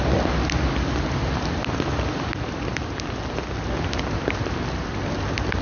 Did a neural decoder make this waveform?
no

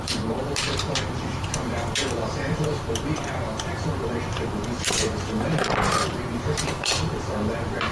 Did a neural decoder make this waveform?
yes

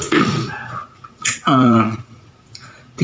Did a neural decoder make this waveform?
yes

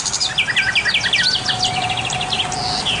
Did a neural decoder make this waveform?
no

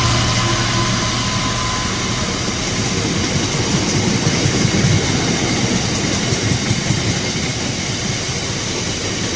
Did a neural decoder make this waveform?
no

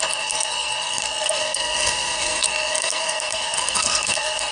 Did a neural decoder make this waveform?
yes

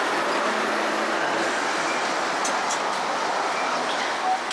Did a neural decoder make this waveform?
no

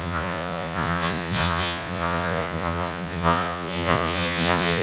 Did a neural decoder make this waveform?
yes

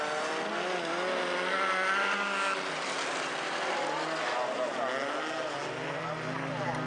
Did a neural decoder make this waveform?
no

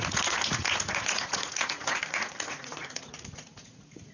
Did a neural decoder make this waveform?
yes